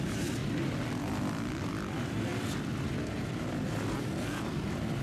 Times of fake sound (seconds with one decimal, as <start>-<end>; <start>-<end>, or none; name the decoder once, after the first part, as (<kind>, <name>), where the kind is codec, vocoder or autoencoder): none